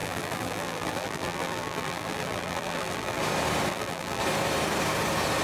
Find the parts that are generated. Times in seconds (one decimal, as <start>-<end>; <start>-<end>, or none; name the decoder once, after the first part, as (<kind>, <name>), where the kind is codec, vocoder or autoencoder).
0.0-3.2 (vocoder, BigVGAN v2); 3.7-4.2